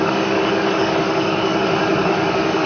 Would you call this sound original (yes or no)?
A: no